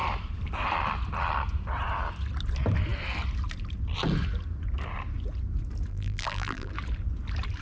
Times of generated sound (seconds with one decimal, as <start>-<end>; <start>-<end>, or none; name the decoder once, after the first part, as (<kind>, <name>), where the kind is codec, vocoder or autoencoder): 5.9-6.7 (vocoder, BigVGAN v2)